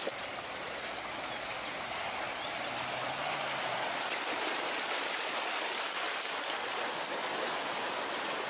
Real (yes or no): yes